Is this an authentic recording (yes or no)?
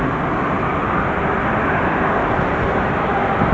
yes